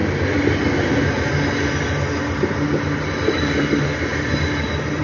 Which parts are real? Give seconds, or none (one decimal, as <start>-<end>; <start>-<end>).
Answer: 0.0-3.0; 4.1-5.0